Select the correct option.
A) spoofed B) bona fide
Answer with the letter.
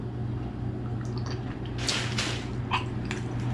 B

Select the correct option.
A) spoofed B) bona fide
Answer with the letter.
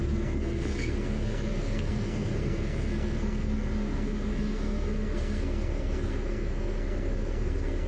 A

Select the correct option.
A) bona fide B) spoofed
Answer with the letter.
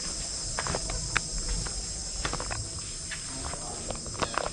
A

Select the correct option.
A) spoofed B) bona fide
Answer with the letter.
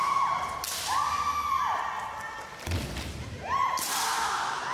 B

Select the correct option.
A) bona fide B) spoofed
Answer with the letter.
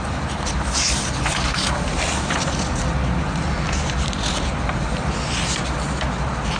A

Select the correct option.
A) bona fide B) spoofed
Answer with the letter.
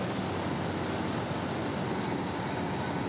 A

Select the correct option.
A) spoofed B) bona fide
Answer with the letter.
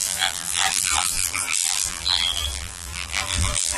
A